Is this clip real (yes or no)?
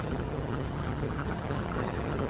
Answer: no